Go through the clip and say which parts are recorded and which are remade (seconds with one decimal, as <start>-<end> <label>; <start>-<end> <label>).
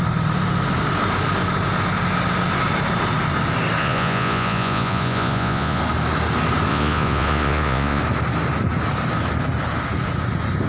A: 0.0-3.8 recorded; 3.8-5.8 remade; 5.8-6.7 recorded; 6.7-8.0 remade; 8.0-10.7 recorded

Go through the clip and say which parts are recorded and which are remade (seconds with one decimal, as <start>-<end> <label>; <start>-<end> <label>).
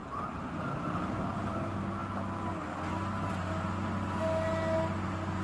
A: 0.0-5.4 recorded